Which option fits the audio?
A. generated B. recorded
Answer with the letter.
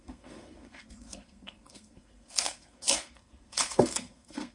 A